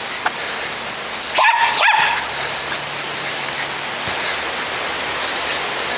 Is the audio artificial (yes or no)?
no